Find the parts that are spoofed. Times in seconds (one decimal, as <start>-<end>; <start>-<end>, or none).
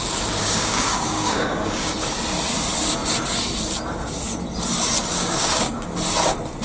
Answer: 0.0-1.9; 5.0-5.9